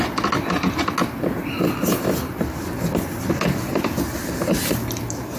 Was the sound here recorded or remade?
recorded